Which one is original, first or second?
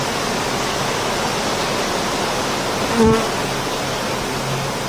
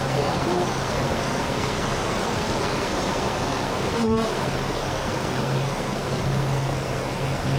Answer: first